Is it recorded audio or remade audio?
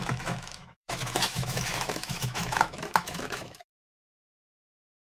remade